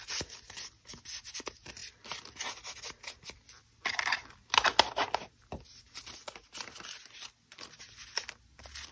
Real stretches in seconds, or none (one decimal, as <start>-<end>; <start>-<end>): 0.0-8.9